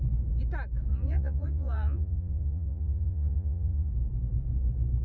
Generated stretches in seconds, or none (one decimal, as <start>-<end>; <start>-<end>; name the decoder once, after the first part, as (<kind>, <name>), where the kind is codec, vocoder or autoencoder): 0.9-3.9 (vocoder, Vocos)